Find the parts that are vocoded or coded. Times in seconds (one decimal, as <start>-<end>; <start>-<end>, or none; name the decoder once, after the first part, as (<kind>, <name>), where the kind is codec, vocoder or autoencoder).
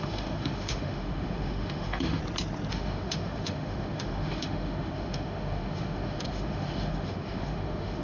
0.0-2.2 (autoencoder, DAC-VAE); 2.7-8.0